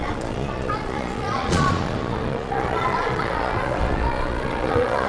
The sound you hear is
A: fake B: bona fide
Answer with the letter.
A